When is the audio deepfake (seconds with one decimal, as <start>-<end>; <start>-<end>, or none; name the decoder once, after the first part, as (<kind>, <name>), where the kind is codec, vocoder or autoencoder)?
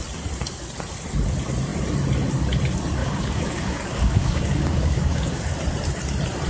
3.0-5.5 (codec, DAC)